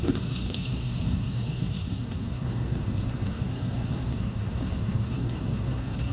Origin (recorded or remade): remade